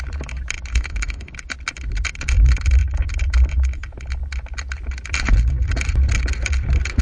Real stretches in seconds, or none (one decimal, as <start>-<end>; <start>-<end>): 0.0-0.7; 1.3-7.0